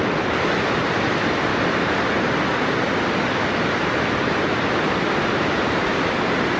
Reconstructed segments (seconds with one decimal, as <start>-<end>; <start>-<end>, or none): 1.5-5.5